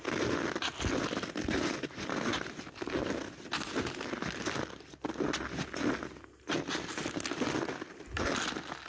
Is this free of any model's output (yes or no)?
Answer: yes